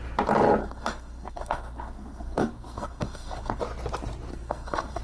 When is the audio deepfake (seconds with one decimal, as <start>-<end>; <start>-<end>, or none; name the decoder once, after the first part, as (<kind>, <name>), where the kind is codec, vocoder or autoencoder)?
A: 0.6-3.6 (codec, SNAC); 4.3-5.0

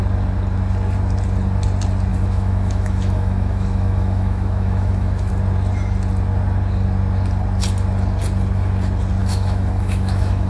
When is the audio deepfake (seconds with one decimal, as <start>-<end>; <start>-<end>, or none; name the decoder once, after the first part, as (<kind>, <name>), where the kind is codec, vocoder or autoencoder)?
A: 2.1-5.3 (autoencoder, DAC-VAE); 9.2-10.5

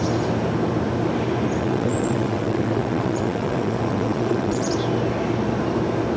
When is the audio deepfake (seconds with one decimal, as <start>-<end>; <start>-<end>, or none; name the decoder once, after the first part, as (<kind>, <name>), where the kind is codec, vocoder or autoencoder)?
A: 1.6-4.7 (vocoder, WaveNeXt)

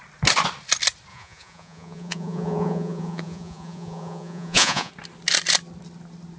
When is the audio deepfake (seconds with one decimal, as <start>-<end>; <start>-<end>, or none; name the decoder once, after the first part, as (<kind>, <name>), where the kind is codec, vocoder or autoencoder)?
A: 1.1-4.9 (vocoder, Vocos)

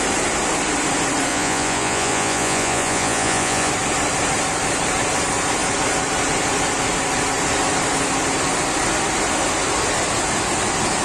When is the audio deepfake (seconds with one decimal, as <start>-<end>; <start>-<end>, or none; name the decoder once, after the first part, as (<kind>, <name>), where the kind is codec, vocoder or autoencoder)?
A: 1.3-3.7 (vocoder, Vocos)

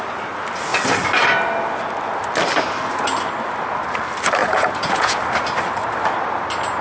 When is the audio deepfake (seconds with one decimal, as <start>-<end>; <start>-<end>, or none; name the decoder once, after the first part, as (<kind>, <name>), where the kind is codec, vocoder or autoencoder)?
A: 4.4-5.2 (vocoder, Vocos)

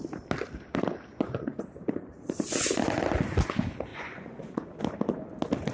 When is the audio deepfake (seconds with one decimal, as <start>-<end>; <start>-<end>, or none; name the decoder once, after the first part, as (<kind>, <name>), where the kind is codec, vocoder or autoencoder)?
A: 1.1-1.6 (vocoder, Vocos); 3.9-4.8

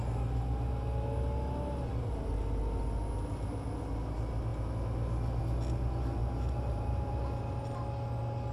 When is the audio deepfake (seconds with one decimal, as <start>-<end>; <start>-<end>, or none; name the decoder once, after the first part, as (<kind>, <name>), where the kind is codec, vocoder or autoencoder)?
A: 6.2-7.1 (vocoder, BigVGAN v2)